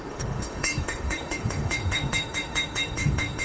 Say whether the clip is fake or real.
fake